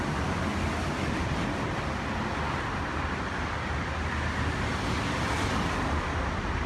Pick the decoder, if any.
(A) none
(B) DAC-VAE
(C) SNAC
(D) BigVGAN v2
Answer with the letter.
A